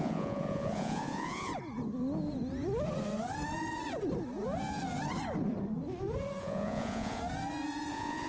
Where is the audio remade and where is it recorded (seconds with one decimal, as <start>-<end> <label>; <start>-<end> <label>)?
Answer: 0.0-1.5 remade; 1.5-6.4 recorded; 6.4-7.2 remade; 7.2-7.9 recorded; 7.9-8.3 remade